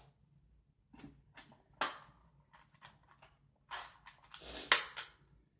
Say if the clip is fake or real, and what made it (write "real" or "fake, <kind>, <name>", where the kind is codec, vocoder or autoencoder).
real